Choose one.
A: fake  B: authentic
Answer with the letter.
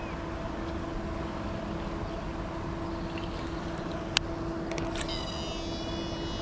B